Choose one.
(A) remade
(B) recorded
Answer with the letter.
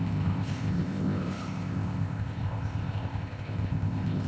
A